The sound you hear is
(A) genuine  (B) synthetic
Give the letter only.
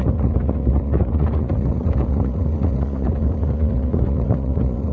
B